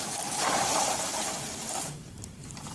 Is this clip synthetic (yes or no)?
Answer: yes